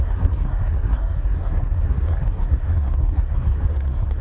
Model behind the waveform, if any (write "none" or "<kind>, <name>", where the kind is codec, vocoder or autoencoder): codec, SNAC